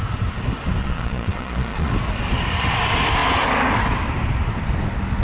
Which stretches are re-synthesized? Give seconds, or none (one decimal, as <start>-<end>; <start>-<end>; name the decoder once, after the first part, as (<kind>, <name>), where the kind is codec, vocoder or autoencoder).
0.8-1.9 (vocoder, Vocos)